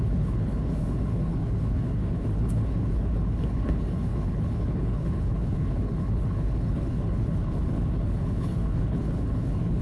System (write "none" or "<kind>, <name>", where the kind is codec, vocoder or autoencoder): codec, HILCodec